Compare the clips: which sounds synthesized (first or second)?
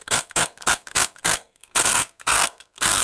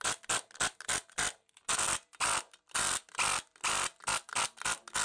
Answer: first